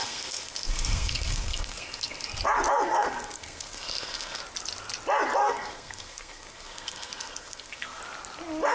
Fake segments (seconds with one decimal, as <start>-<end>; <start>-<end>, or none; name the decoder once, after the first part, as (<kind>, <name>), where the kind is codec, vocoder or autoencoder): 0.0-2.4 (codec, SNAC); 2.9-4.4; 5.4-8.0